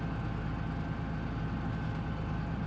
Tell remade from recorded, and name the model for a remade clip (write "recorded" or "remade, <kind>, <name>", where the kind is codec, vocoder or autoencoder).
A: recorded